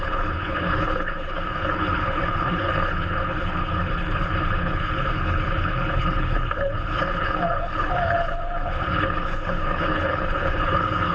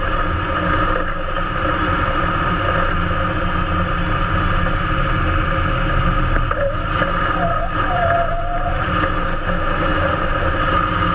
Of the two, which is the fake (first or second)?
first